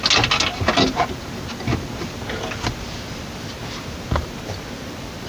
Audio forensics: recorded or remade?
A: recorded